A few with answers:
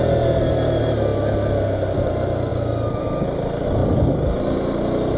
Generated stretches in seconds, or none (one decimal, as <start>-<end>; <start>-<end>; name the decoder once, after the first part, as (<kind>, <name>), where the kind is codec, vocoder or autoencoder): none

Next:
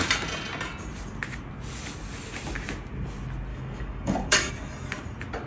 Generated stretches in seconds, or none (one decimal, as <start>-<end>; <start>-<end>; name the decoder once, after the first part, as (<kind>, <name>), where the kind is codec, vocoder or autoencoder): 3.5-4.5 (codec, DAC)

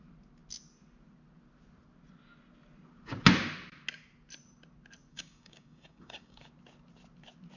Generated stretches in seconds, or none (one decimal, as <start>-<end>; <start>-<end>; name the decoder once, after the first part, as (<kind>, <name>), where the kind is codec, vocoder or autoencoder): 5.1-6.5 (codec, DAC)

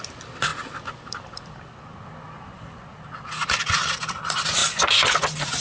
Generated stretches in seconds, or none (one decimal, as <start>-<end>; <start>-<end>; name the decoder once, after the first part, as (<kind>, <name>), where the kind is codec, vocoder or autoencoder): none

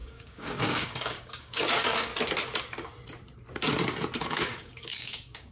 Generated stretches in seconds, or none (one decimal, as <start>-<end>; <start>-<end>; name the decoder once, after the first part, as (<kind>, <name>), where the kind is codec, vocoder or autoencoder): 0.0-2.1 (codec, DAC); 4.2-5.5

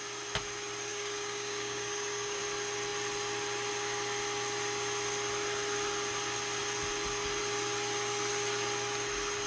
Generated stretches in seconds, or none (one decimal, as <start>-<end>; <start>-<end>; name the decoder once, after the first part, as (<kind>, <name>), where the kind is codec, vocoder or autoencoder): 0.9-2.4 (codec, DAC)

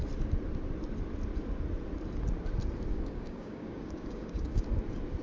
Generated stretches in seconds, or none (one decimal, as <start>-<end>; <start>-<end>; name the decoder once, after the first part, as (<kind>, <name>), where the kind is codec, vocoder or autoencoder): 2.9-4.6 (codec, DAC)

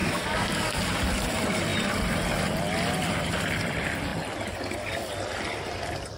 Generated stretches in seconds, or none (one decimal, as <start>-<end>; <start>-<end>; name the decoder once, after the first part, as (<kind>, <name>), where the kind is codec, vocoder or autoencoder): 0.0-0.8 (codec, DAC)